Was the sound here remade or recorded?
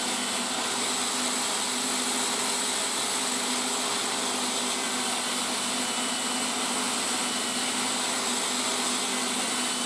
recorded